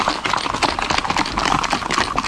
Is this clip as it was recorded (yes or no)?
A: yes